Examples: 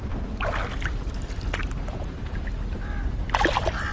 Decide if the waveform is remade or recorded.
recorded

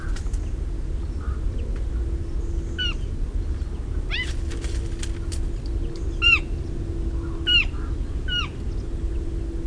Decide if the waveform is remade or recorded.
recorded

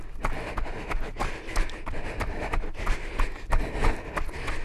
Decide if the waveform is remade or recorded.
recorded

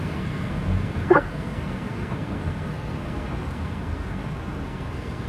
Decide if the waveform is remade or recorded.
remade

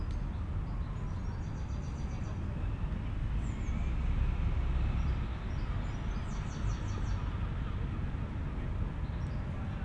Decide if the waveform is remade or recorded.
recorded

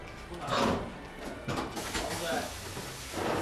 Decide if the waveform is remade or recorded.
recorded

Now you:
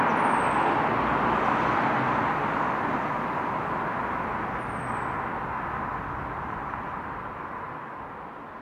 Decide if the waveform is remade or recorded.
recorded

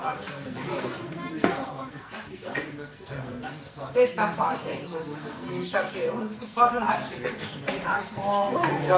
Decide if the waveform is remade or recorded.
remade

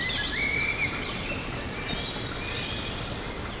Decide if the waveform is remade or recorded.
recorded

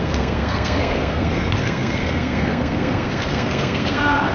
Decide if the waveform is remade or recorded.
remade